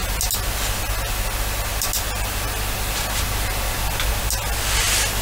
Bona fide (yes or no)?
yes